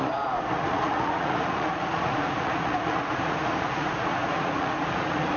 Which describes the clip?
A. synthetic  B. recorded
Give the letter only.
A